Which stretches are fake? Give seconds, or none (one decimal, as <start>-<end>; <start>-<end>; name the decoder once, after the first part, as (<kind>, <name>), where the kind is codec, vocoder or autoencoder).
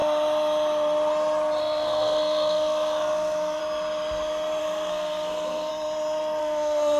1.6-3.6 (codec, SNAC); 4.6-5.7; 6.4-7.0